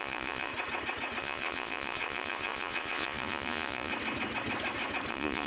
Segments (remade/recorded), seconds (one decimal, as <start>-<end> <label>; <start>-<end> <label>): 0.0-0.5 remade; 0.5-1.2 recorded; 1.2-3.9 remade; 3.9-5.1 recorded; 5.1-5.5 remade